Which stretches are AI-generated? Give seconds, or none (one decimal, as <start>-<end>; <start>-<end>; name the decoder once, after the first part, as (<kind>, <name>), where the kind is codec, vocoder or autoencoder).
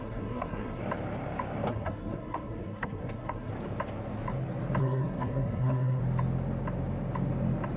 0.0-0.8 (codec, SNAC); 1.7-3.5; 4.8-6.0